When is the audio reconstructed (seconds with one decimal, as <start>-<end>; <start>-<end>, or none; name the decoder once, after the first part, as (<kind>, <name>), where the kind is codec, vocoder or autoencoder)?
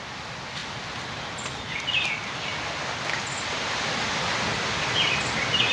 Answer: none